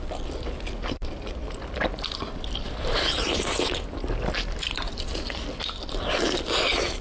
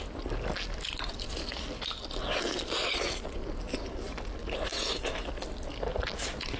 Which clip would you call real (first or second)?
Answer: second